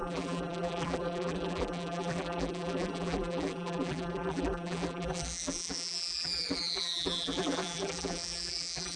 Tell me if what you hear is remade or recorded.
remade